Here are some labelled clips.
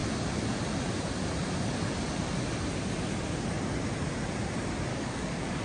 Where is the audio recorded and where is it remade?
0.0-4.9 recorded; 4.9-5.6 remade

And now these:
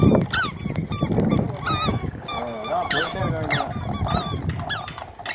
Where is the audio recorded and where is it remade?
0.0-1.9 recorded; 1.9-3.2 remade; 3.2-5.3 recorded